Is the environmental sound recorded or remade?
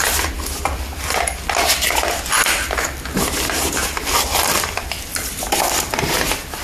recorded